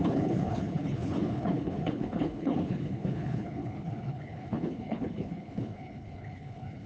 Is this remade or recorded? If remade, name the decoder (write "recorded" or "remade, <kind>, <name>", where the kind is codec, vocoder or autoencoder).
remade, codec, HILCodec